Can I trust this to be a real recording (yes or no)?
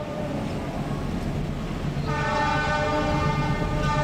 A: yes